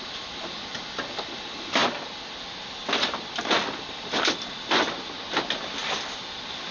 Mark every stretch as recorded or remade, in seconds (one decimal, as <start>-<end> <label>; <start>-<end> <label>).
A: 0.0-6.7 recorded